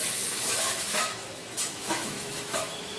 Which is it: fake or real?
fake